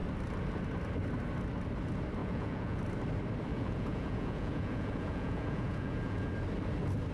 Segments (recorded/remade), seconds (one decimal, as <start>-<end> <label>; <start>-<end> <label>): 0.0-2.2 recorded; 2.2-2.8 remade; 2.8-3.5 recorded; 3.5-6.3 remade; 6.3-7.1 recorded